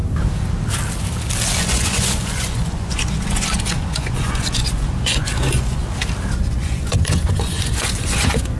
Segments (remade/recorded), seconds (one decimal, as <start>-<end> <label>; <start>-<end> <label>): 0.0-1.6 recorded; 1.6-5.8 remade; 5.8-6.4 recorded; 6.4-8.6 remade